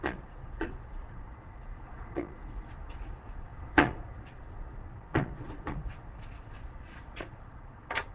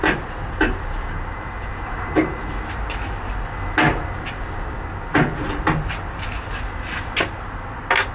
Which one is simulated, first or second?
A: first